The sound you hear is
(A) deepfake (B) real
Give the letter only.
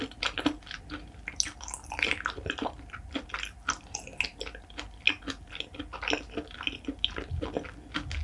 B